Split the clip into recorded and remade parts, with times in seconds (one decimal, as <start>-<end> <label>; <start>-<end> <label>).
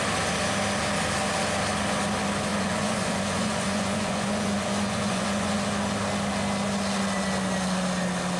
0.0-2.5 recorded; 2.5-5.6 remade; 5.6-8.4 recorded